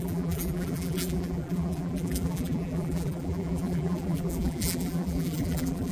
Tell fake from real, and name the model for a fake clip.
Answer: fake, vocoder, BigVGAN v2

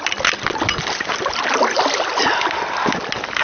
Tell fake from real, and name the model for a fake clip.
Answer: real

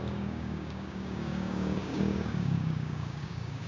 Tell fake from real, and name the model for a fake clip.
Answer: fake, codec, DAC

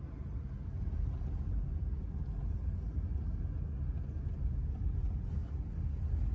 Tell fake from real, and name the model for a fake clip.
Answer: real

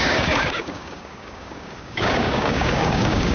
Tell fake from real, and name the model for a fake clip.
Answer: fake, codec, DAC